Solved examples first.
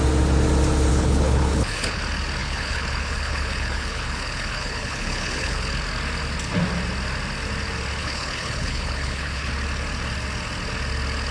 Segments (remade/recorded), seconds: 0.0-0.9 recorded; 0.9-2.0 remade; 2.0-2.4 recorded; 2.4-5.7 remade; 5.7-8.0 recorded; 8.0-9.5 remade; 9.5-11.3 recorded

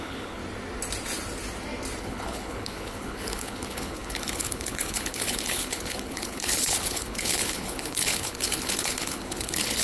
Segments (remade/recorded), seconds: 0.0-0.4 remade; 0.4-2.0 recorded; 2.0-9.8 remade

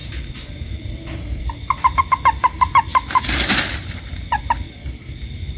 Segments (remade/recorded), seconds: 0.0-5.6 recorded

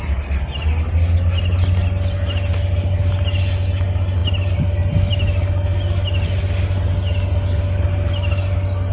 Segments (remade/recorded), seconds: 0.0-8.9 recorded

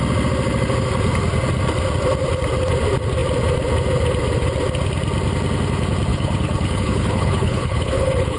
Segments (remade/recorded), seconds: 0.0-6.1 recorded; 6.1-8.4 remade

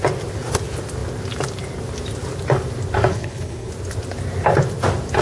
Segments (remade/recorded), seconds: 0.0-3.1 recorded; 3.1-3.7 remade; 3.7-5.2 recorded